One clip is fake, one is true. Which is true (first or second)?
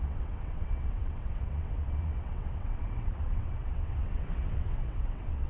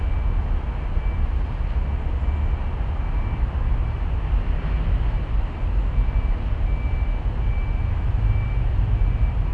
second